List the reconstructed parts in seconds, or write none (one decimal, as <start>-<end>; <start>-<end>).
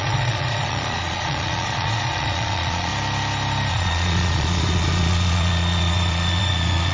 0.0-2.9; 3.7-6.9